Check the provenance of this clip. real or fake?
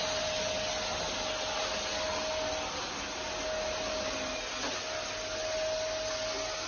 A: real